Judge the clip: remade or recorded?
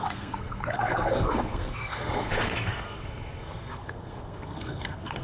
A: remade